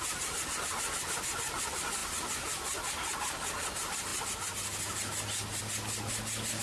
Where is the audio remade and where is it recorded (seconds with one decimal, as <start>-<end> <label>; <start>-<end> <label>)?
0.0-6.6 recorded